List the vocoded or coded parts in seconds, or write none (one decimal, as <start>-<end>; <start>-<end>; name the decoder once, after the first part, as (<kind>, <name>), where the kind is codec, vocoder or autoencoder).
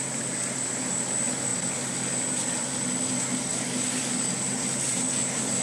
3.5-4.3 (codec, DAC)